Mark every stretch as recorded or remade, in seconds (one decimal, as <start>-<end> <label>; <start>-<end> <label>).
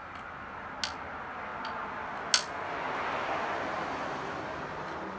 0.0-5.2 recorded